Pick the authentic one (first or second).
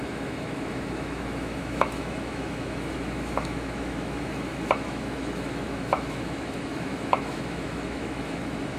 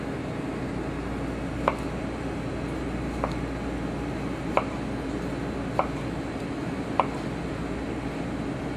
second